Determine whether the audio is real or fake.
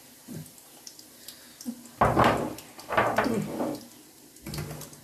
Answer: real